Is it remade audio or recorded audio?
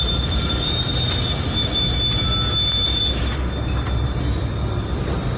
recorded